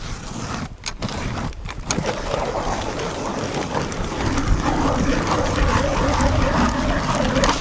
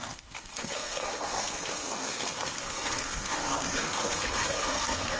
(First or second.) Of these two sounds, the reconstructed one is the second